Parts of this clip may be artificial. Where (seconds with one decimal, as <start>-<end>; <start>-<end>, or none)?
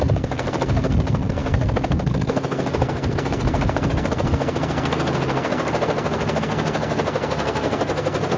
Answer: 0.0-8.4